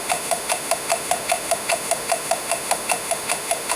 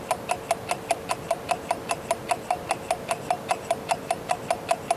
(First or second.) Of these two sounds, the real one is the second